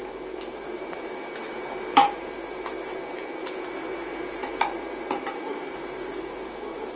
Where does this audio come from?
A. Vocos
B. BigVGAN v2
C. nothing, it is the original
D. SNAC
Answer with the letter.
B